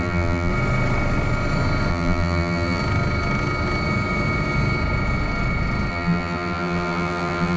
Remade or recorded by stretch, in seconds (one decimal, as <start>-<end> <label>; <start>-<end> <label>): 0.0-0.5 remade; 0.5-1.9 recorded; 1.9-2.8 remade; 2.8-5.9 recorded; 5.9-7.6 remade